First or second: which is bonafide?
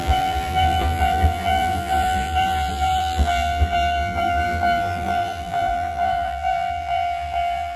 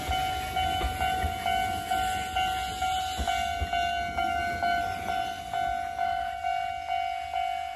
second